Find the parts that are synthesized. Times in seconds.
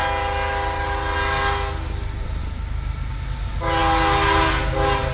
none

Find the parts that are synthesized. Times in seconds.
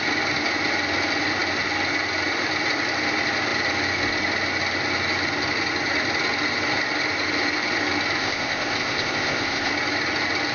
8.2-9.7 (codec, ZipCodec)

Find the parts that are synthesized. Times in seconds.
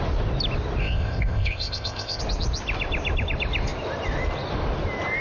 0.8-2.2 (codec, ZipCodec)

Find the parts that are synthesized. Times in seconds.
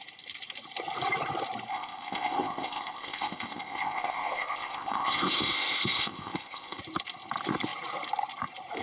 1.7-6.8 (codec, ZipCodec)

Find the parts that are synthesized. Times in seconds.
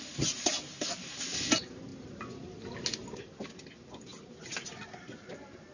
none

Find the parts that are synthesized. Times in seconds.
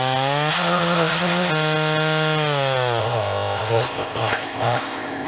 0.5-1.5 (codec, ZipCodec); 3.0-5.3